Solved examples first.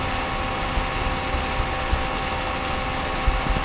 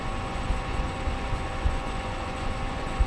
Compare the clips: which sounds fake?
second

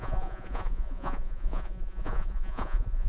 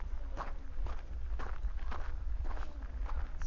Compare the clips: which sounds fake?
first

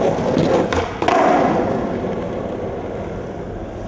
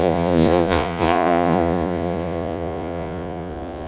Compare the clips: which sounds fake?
second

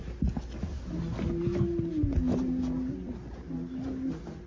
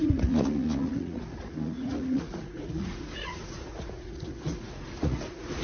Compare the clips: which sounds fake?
second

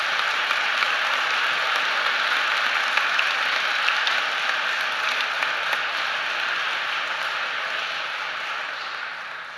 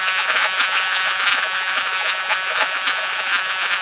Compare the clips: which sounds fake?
second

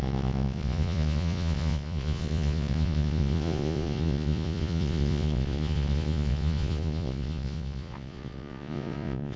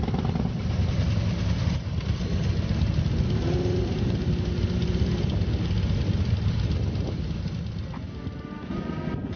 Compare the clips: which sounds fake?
first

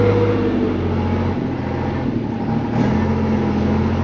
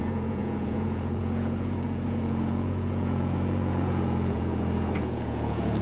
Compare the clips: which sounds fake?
second